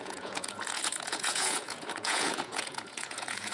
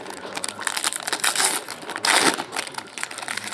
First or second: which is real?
second